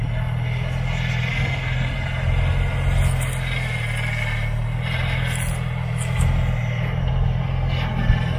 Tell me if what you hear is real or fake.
real